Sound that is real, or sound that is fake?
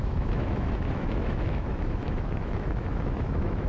fake